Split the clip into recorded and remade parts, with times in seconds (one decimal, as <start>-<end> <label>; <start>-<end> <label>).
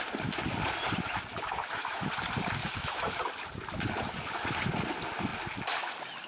0.0-1.3 recorded; 1.3-2.1 remade; 2.1-2.6 recorded; 2.6-3.2 remade; 3.2-6.3 recorded